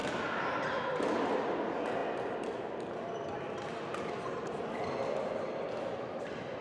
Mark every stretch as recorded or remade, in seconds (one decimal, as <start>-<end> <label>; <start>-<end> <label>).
0.0-0.8 remade; 0.8-6.6 recorded